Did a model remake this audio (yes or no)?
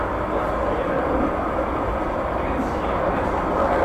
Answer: no